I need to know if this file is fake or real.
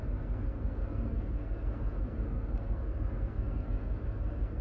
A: fake